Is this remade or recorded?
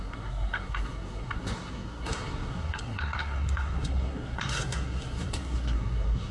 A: remade